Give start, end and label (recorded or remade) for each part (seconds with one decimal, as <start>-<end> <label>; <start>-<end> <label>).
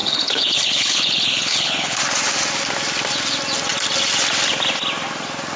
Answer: 0.0-2.0 remade; 2.0-5.6 recorded